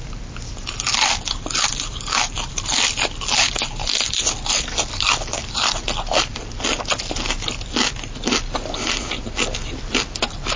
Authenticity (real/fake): real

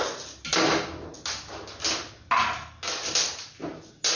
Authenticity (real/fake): real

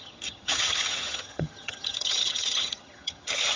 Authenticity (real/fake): fake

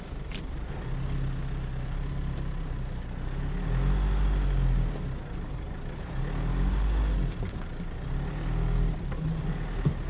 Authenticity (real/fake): real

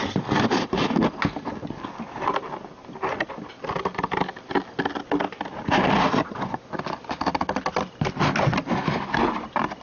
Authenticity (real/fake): real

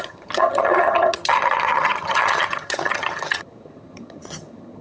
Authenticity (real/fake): fake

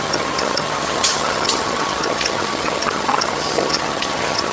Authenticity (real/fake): fake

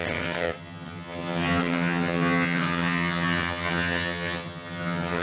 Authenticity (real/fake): fake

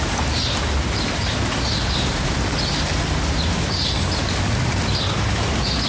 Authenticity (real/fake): real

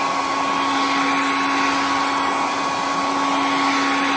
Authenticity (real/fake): real